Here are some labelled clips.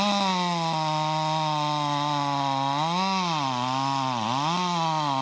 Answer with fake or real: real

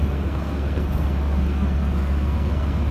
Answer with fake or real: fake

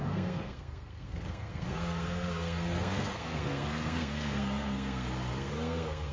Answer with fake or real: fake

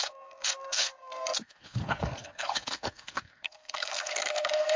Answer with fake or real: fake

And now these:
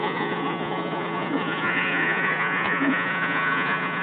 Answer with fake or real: fake